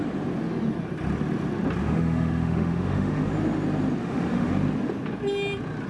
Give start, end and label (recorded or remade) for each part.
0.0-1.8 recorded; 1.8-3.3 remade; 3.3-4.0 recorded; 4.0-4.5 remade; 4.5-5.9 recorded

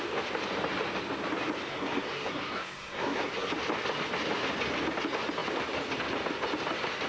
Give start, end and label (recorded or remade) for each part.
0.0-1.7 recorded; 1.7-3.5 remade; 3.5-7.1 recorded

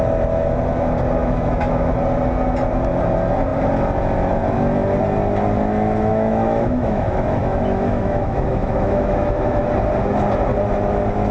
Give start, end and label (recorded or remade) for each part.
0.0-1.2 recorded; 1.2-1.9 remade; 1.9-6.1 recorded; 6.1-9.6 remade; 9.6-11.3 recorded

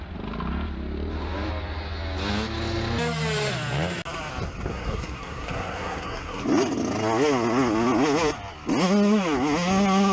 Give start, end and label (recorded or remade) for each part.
0.0-4.7 recorded; 4.7-6.4 remade; 6.4-10.1 recorded